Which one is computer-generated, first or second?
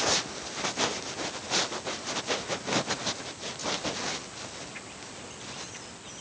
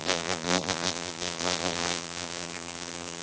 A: second